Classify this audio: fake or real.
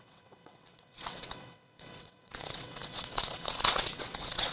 fake